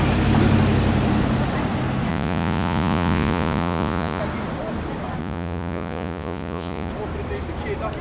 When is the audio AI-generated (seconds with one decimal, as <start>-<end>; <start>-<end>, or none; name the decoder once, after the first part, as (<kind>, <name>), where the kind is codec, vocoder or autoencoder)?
2.1-4.2 (vocoder, Vocos); 5.2-6.9